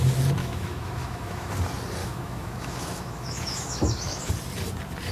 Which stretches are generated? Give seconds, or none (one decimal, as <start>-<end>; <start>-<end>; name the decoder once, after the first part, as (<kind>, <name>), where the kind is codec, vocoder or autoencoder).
0.4-1.5 (autoencoder, DAC-VAE); 2.0-4.3